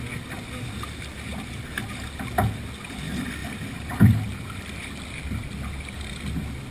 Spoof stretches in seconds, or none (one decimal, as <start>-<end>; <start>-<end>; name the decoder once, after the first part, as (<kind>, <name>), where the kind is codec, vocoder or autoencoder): 3.4-4.9 (vocoder, BigVGAN v2)